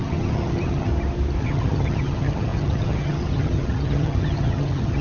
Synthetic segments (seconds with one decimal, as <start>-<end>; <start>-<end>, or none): 0.0-0.9; 1.4-5.0